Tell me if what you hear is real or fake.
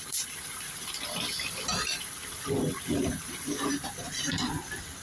fake